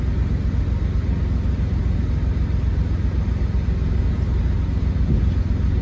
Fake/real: real